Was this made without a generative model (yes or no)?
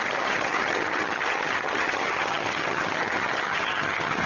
no